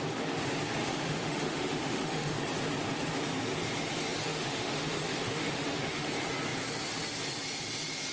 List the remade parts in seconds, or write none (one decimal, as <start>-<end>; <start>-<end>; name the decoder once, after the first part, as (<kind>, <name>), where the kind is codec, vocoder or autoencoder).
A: 0.8-2.4 (autoencoder, DAC-VAE); 4.2-6.1